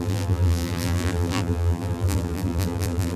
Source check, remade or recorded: remade